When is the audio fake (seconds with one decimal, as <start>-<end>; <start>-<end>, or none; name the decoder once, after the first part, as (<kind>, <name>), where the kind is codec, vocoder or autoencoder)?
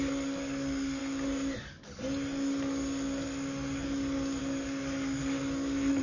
none